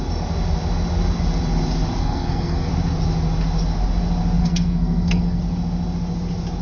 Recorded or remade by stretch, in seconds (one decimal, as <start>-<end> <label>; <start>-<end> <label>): 0.0-2.0 recorded; 2.0-2.7 remade; 2.7-4.4 recorded; 4.4-5.4 remade; 5.4-6.6 recorded

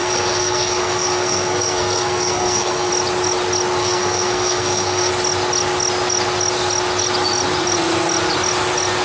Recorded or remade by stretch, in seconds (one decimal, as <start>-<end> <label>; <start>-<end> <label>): 0.0-2.9 remade; 2.9-3.8 recorded; 3.8-5.1 remade; 5.1-9.0 recorded

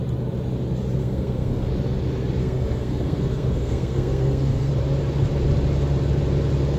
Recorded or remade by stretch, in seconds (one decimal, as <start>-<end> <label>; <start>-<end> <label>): 0.0-1.0 recorded; 1.0-1.7 remade; 1.7-2.4 recorded; 2.4-4.7 remade; 4.7-6.8 recorded

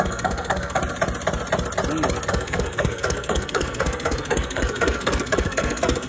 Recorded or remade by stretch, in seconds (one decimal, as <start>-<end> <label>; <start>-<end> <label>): 0.0-0.8 remade; 0.8-2.3 recorded; 2.3-6.1 remade

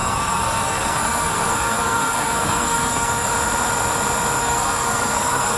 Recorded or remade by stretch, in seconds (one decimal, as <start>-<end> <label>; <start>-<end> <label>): 0.0-3.3 remade; 3.3-4.4 recorded; 4.4-5.6 remade

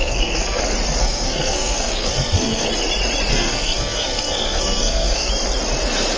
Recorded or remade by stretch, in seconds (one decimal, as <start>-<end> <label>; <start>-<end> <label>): 0.0-0.6 remade; 0.6-1.0 recorded; 1.0-2.7 remade; 2.7-3.3 recorded; 3.3-5.3 remade; 5.3-6.2 recorded